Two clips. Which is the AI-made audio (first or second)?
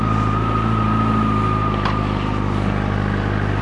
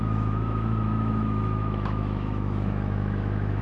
second